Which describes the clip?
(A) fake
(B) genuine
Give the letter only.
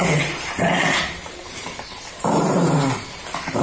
A